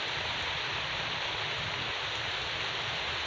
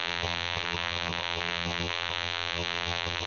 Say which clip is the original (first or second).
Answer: first